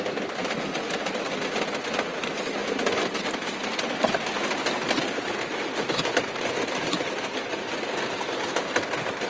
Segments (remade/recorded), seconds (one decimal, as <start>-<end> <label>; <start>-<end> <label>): 0.0-0.4 remade; 0.4-1.8 recorded; 1.8-2.6 remade; 2.6-4.6 recorded; 4.6-9.3 remade